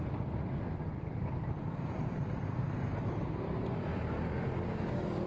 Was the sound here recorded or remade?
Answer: recorded